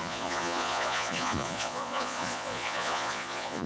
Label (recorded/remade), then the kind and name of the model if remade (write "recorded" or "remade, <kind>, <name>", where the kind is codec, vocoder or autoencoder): remade, vocoder, Vocos